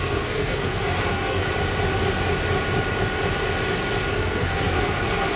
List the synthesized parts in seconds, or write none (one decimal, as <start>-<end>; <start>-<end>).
0.0-1.5; 4.1-5.4

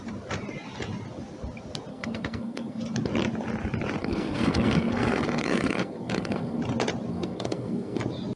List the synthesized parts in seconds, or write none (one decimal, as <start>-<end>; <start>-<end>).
1.9-2.8; 4.0-6.6; 7.1-8.0

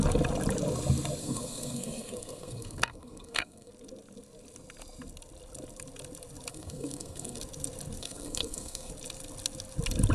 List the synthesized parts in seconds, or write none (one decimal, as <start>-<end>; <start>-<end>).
1.2-3.7; 6.5-7.4; 8.0-8.9